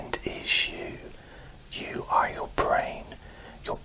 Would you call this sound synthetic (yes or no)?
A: no